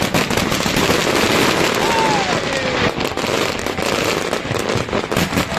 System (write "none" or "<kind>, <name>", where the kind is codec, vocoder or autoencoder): none